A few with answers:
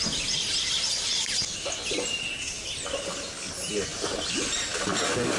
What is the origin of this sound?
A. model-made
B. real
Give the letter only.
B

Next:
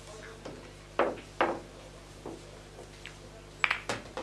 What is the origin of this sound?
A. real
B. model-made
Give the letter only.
A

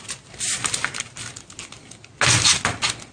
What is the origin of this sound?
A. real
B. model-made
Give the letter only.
A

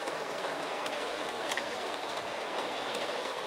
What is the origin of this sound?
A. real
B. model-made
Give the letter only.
B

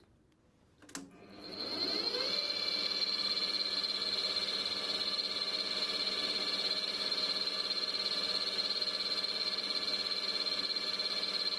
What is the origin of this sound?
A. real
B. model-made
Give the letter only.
A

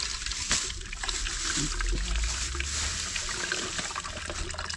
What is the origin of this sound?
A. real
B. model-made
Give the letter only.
A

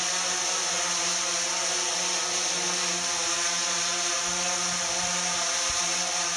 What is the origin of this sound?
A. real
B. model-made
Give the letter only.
A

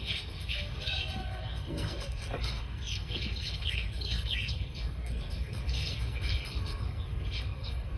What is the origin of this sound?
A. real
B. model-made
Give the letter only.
B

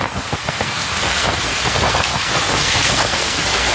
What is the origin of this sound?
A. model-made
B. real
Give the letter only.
A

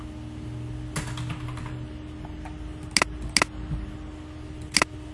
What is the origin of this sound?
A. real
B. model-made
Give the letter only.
A